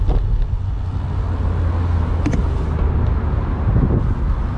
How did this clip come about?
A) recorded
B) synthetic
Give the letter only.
A